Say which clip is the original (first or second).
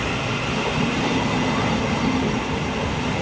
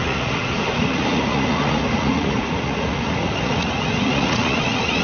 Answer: first